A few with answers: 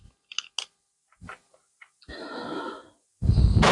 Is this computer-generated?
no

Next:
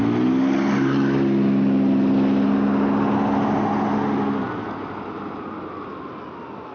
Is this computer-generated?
no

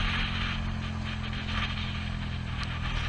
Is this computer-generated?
no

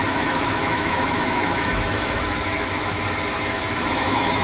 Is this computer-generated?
yes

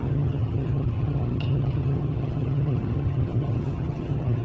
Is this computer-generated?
yes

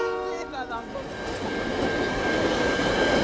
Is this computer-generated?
no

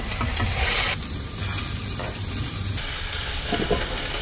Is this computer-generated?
yes